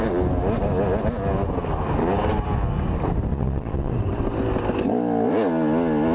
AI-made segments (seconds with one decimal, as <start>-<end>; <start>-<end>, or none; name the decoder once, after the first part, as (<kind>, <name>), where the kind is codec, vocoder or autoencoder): 3.3-3.9 (vocoder, Vocos)

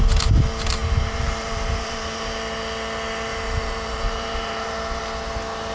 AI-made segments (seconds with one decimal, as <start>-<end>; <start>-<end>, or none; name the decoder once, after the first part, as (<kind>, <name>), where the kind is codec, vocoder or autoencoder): 0.8-2.3 (vocoder, BigVGAN v2); 3.3-5.0

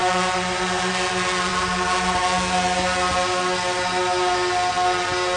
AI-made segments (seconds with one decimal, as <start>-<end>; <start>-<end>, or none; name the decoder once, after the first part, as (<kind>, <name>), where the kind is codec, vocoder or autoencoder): none

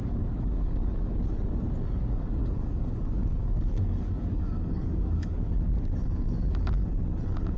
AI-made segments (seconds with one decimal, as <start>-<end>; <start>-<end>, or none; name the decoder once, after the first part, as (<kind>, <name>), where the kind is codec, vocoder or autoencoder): 0.0-1.2 (codec, DAC); 2.0-5.5

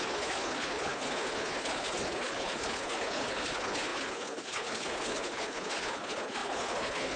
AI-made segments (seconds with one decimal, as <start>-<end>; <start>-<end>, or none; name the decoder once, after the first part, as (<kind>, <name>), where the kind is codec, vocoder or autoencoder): 0.0-7.2 (codec, HILCodec)